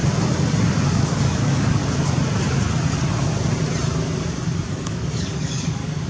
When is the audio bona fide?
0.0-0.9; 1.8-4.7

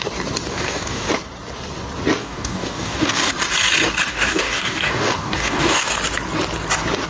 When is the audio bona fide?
0.0-0.5; 1.1-2.2; 3.3-4.1; 5.9-7.1

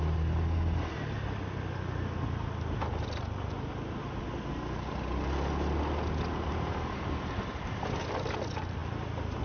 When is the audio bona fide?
0.0-9.4